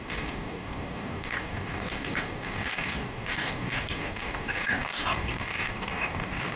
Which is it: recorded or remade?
remade